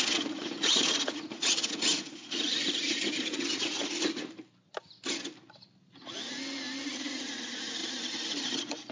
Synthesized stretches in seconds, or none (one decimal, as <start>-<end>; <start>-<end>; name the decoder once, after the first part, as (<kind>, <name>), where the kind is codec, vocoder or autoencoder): 0.0-3.8 (vocoder, Vocos); 6.9-7.8; 8.4-8.9